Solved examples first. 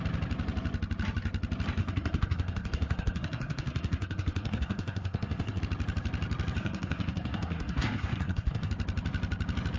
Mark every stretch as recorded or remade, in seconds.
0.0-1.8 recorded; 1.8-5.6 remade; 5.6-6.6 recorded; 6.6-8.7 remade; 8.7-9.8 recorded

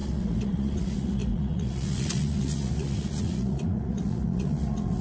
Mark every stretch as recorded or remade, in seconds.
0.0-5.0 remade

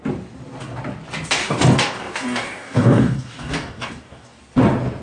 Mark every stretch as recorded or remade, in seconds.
0.0-1.4 recorded; 1.4-4.4 remade; 4.4-5.0 recorded

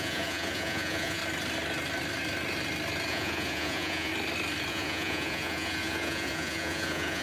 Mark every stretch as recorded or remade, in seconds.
0.0-1.2 remade; 1.2-3.1 recorded; 3.1-4.1 remade; 4.1-4.7 recorded; 4.7-7.2 remade

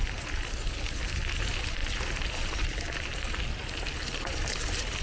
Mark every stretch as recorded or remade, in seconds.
0.0-5.0 recorded

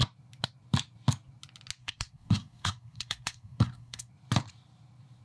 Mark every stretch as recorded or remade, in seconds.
0.0-1.8 recorded; 1.8-4.1 remade; 4.1-5.2 recorded

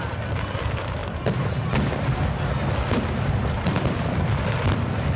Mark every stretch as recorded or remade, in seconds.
0.0-1.0 remade; 1.0-2.9 recorded; 2.9-5.2 remade